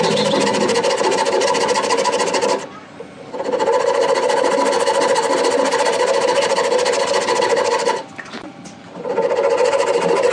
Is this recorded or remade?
recorded